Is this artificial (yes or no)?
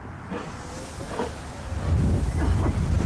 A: no